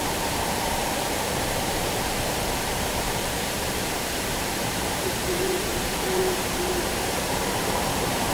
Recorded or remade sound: remade